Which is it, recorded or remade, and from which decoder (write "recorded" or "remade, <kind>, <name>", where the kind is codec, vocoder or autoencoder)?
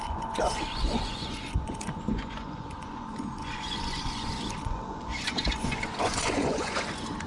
remade, vocoder, Vocos